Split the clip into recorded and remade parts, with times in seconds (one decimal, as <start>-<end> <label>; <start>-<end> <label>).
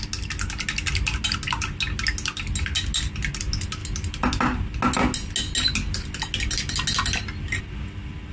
0.0-8.3 recorded